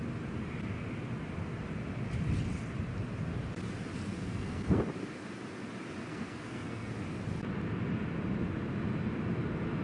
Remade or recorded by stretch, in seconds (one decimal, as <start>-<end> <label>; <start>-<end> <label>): 0.0-4.1 recorded; 4.1-4.8 remade; 4.8-6.1 recorded; 6.1-6.9 remade; 6.9-9.8 recorded